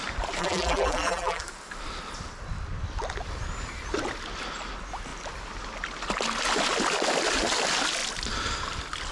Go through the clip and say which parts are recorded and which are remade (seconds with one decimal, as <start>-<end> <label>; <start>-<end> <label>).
0.0-0.4 recorded; 0.4-1.4 remade; 1.4-9.1 recorded